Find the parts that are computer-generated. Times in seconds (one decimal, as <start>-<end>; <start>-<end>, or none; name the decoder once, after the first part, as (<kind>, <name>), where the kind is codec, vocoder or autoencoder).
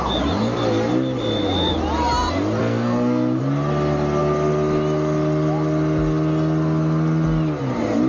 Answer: 2.6-3.4 (codec, SNAC)